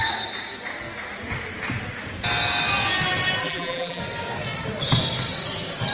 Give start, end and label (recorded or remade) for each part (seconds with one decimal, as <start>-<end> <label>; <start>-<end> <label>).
0.0-3.4 recorded; 3.4-4.0 remade; 4.0-5.9 recorded